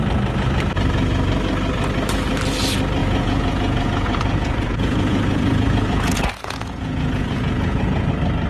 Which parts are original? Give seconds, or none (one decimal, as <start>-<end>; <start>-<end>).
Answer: 0.0-3.0; 8.1-8.5